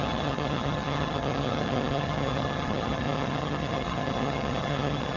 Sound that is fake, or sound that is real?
fake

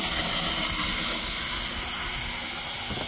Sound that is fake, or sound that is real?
real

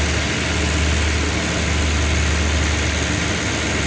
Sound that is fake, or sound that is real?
real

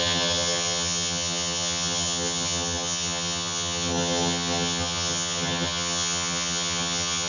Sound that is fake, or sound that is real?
fake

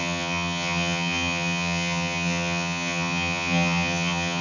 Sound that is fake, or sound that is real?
fake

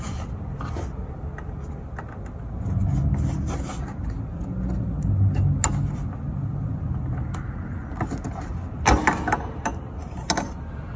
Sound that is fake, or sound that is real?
real